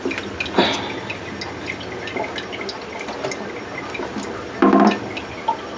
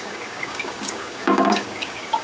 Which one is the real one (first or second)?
first